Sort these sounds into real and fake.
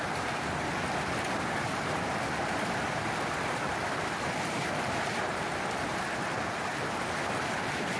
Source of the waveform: real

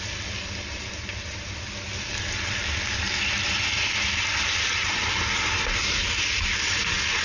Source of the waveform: real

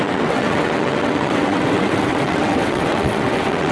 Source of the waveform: fake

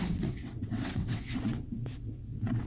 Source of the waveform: fake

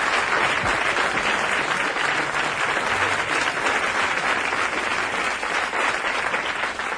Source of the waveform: real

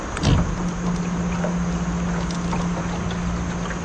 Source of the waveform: real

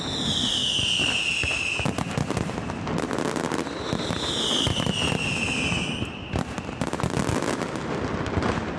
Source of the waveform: real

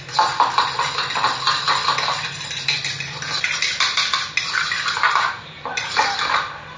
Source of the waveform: real